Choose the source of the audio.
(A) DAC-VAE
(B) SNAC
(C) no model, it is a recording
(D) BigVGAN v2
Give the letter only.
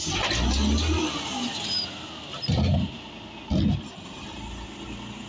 C